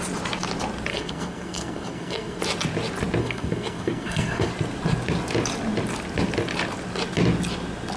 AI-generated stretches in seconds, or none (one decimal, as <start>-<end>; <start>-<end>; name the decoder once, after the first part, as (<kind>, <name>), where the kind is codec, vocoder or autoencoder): 0.9-2.4 (codec, SNAC); 3.2-4.5

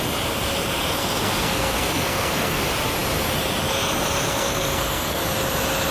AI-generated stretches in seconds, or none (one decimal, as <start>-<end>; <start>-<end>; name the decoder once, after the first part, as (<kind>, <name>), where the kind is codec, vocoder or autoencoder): 1.0-2.6 (codec, SNAC); 4.3-5.2